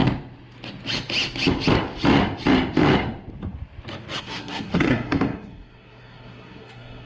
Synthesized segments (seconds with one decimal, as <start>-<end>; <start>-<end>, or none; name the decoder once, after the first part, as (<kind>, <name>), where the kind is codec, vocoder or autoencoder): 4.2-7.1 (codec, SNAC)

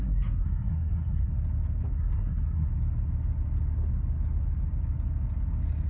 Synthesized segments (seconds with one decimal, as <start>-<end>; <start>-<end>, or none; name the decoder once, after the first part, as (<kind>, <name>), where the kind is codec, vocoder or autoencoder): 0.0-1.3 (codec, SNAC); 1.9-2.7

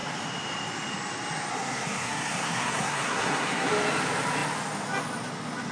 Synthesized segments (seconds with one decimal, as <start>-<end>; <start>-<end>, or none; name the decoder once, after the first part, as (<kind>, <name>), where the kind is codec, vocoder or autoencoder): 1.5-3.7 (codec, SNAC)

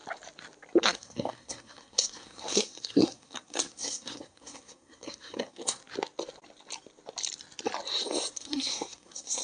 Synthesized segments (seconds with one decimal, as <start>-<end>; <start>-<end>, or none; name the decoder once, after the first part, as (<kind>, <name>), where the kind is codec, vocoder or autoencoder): 0.8-5.8 (codec, SNAC); 8.3-9.4

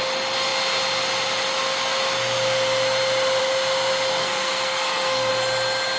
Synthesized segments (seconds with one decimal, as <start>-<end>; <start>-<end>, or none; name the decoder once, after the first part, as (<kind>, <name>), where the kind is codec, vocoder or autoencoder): 4.1-5.3 (codec, SNAC)

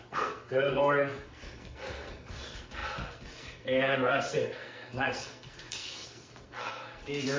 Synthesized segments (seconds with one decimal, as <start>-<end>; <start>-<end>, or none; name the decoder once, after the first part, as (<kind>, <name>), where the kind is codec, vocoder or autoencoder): 0.0-7.4 (codec, SNAC)

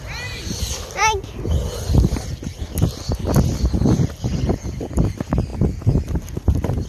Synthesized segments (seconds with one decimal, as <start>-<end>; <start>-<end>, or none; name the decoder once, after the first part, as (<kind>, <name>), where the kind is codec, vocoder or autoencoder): none